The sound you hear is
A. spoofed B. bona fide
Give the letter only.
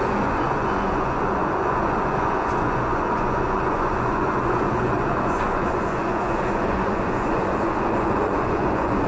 A